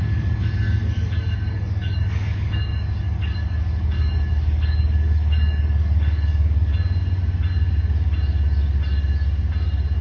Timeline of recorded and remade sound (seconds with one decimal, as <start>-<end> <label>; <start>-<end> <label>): 0.0-6.7 remade; 6.7-10.0 recorded